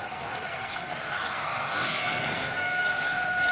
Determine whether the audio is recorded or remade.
remade